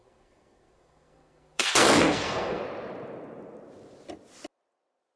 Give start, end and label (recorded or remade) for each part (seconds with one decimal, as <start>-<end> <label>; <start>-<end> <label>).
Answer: 0.0-2.6 remade; 2.6-5.2 recorded